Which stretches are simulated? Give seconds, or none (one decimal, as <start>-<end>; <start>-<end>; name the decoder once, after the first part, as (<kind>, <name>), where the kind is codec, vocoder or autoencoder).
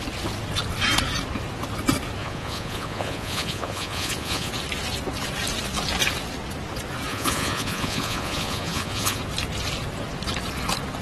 2.2-4.5 (vocoder, Vocos); 7.1-9.2